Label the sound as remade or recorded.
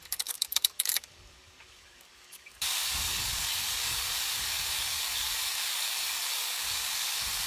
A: remade